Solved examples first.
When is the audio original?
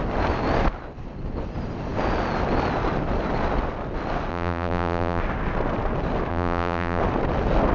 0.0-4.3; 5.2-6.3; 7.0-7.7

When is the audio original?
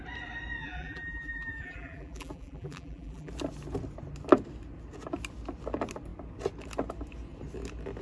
0.0-0.6; 3.3-8.0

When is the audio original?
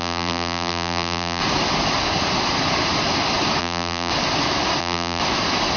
1.4-3.6; 4.1-4.8; 5.2-5.8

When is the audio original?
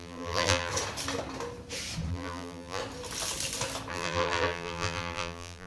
0.7-2.1; 2.8-3.9